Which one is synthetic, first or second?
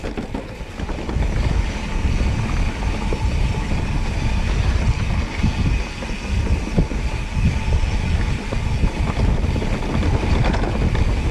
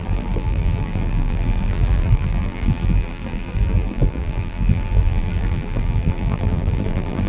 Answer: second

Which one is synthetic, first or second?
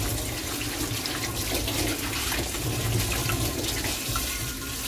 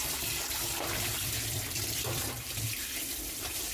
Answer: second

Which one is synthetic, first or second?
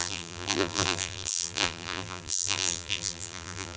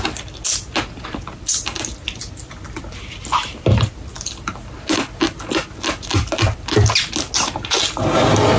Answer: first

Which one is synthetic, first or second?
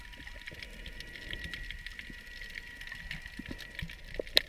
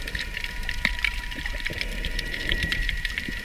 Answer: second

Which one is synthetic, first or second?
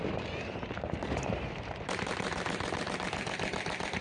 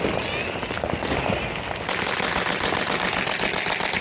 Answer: first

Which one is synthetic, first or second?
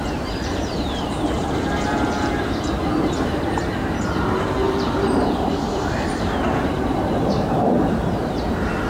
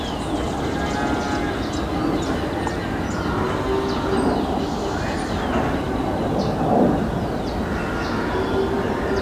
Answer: first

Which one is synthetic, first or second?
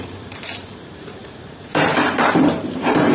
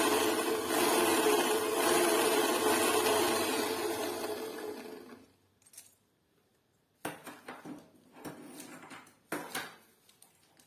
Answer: first